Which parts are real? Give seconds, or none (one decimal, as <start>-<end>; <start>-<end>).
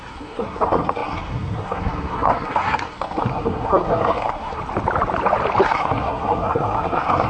4.6-5.6